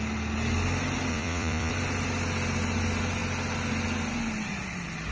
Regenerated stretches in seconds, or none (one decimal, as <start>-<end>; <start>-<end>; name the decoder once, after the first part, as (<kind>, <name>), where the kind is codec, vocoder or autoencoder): 1.1-1.7 (vocoder, Vocos)